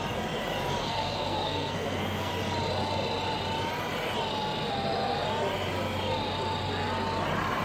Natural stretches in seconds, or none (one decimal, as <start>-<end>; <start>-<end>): 0.0-0.8; 2.3-7.6